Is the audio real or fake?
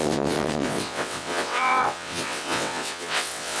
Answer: fake